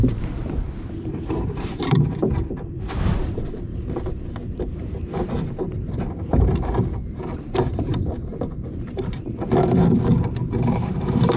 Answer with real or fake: fake